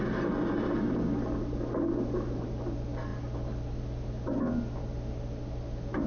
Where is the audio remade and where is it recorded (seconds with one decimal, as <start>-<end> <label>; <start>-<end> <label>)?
0.0-6.1 recorded